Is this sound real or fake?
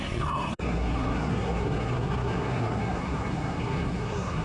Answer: fake